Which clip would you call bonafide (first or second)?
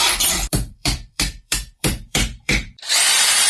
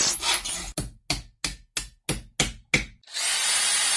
second